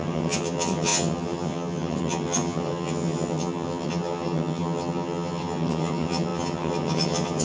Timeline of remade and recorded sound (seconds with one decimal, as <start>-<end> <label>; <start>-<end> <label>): 0.0-7.4 remade